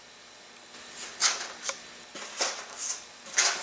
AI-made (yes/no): no